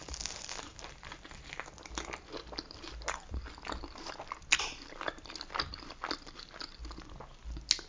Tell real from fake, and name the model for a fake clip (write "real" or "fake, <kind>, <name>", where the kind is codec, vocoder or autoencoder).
real